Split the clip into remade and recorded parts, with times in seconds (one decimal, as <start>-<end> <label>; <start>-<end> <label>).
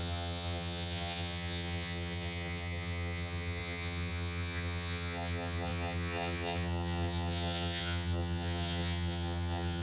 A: 0.0-9.8 remade